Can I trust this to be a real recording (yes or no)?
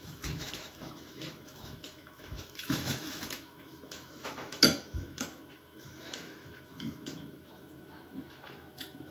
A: no